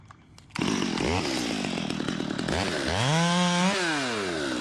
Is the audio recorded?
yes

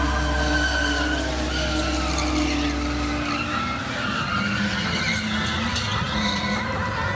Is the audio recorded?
yes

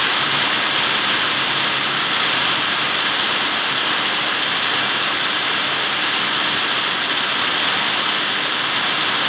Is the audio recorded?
yes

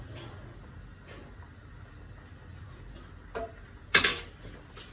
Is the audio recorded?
yes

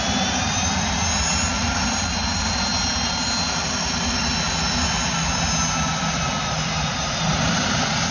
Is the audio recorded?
yes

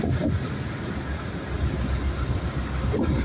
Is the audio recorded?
yes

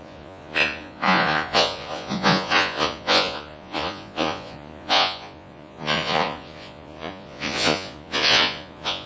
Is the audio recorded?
no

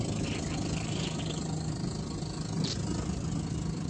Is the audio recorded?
yes